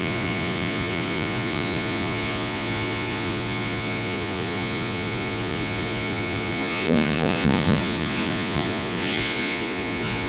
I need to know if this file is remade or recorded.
remade